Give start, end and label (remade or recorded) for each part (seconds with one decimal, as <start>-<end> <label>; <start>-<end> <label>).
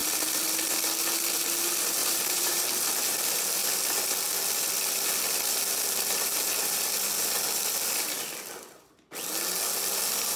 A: 0.0-2.0 recorded; 2.0-2.6 remade; 2.6-10.4 recorded